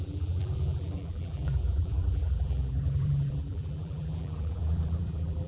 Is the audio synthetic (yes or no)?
yes